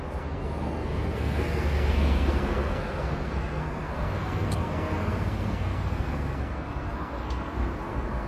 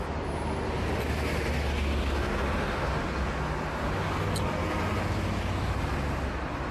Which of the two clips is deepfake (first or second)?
first